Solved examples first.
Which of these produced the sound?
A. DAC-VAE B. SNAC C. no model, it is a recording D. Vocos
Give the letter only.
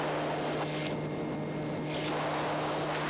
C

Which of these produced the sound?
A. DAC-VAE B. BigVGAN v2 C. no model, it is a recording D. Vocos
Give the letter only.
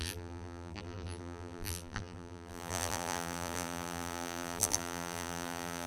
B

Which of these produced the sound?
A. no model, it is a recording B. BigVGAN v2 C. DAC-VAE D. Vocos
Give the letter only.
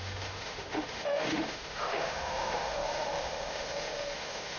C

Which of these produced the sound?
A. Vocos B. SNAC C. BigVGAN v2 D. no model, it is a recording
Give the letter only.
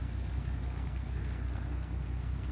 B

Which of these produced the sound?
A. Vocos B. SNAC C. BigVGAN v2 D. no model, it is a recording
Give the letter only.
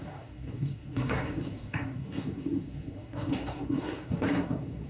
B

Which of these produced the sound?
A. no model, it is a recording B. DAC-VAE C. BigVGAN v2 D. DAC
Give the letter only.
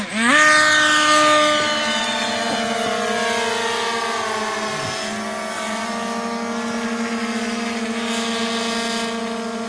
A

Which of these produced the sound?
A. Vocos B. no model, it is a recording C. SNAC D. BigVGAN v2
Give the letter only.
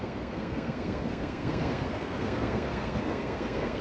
C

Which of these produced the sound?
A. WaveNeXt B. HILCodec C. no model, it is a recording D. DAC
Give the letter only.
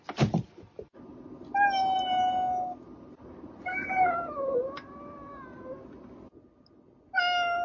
C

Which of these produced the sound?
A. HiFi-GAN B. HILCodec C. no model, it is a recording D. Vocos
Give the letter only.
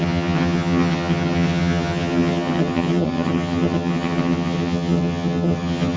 A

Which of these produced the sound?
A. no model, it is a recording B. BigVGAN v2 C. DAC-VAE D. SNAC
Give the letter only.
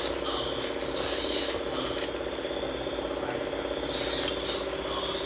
A